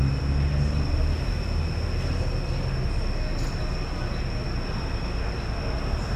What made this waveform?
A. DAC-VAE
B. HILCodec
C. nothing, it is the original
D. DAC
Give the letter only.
C